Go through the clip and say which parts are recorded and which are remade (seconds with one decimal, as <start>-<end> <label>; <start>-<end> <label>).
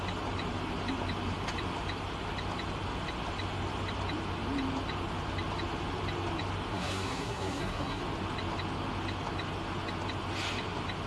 0.0-6.7 recorded; 6.7-8.0 remade; 8.0-11.1 recorded